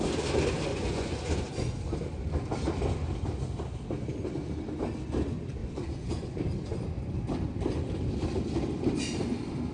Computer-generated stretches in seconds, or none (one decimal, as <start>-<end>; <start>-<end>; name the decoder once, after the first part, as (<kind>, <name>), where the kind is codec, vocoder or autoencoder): 0.7-1.4 (vocoder, Vocos); 5.6-6.4